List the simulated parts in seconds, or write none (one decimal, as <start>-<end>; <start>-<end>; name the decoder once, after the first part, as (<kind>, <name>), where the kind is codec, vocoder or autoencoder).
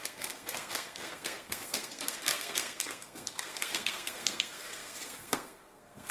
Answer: 0.0-6.1 (codec, SNAC)